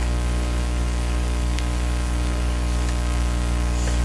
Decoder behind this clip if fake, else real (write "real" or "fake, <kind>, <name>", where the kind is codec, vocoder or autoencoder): fake, codec, DAC